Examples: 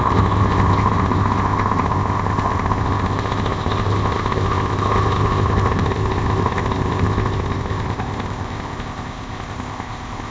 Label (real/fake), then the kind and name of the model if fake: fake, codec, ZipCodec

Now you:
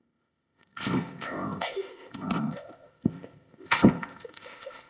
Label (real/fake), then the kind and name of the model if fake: fake, codec, ZipCodec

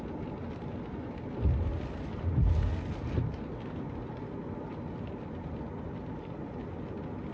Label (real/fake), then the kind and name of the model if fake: real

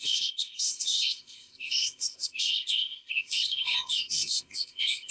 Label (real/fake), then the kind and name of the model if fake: fake, codec, ZipCodec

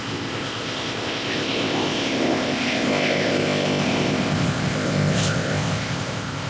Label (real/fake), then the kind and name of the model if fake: fake, codec, ZipCodec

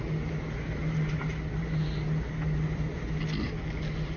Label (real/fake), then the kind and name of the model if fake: real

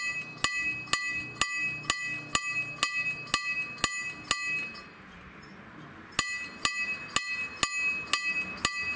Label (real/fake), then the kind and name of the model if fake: real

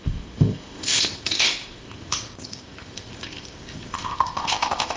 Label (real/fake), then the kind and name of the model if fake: fake, codec, ZipCodec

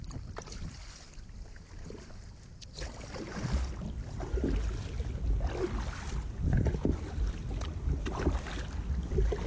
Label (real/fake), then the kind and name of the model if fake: real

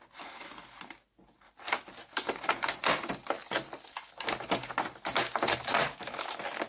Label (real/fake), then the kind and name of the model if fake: real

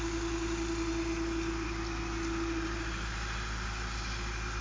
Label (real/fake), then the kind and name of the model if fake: real